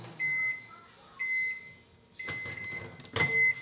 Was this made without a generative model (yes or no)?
yes